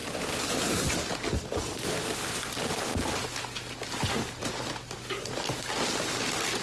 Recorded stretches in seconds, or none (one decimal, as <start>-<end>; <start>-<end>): 0.9-6.6